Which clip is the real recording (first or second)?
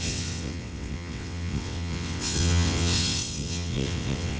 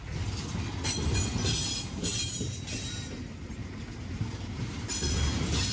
second